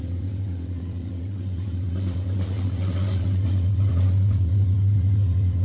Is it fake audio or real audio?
fake